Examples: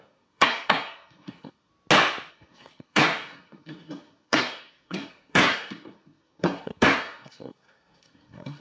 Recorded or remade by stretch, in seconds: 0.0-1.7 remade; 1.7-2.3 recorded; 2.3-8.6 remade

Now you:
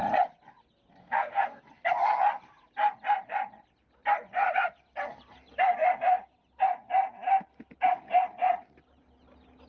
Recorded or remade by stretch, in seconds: 0.0-1.0 recorded; 1.0-1.6 remade; 1.6-9.7 recorded